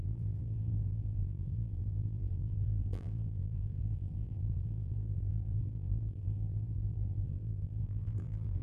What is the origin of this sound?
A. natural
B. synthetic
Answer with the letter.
B